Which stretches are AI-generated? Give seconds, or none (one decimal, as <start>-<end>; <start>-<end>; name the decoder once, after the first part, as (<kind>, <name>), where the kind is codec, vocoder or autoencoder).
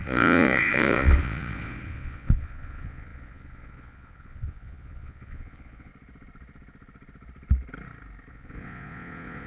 0.0-5.9 (vocoder, Vocos); 8.3-9.5